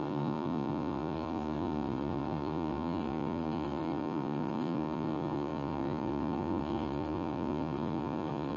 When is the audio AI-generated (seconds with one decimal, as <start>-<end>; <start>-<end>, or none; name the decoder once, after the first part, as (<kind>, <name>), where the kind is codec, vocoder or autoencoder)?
0.0-8.6 (vocoder, Vocos)